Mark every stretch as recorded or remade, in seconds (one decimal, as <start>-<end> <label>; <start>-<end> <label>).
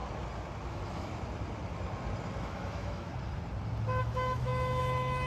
0.0-0.7 recorded; 0.7-1.1 remade; 1.1-2.4 recorded; 2.4-3.1 remade; 3.1-4.0 recorded; 4.0-5.3 remade